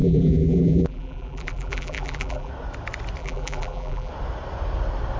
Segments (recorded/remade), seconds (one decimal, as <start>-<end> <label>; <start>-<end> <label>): 0.0-2.5 remade; 2.5-3.2 recorded; 3.2-4.1 remade; 4.1-5.2 recorded